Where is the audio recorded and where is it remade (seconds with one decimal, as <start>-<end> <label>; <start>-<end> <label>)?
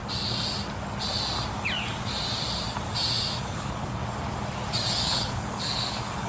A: 0.0-3.4 recorded; 3.4-4.0 remade; 4.0-5.0 recorded; 5.0-6.3 remade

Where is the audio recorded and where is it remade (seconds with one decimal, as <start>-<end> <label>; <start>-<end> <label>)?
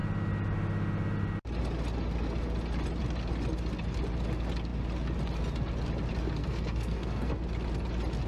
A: 0.0-6.4 recorded; 6.4-7.3 remade; 7.3-8.3 recorded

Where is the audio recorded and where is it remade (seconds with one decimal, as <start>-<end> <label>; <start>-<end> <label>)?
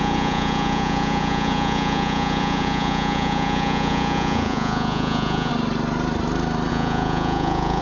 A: 0.0-5.5 remade; 5.5-6.7 recorded; 6.7-7.8 remade